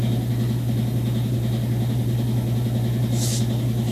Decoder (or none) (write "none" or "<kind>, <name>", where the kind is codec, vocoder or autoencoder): none